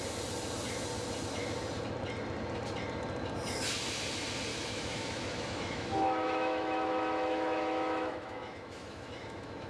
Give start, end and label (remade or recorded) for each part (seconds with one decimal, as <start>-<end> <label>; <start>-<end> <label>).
0.0-4.5 recorded; 4.5-9.7 remade